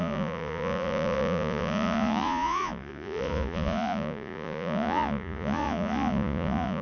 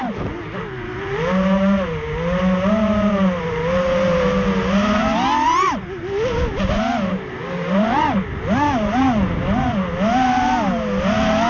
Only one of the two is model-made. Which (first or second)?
first